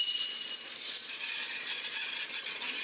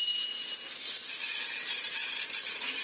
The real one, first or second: second